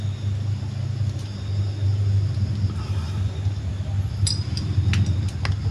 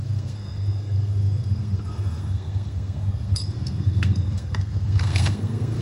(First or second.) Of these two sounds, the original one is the first